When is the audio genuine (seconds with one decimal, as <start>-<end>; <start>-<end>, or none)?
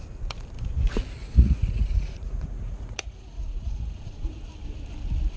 0.0-1.2; 4.4-5.4